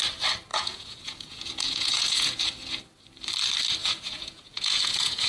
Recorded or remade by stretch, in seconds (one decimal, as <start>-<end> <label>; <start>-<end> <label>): 0.0-0.5 recorded; 0.5-2.4 remade; 2.4-3.8 recorded; 3.8-5.3 remade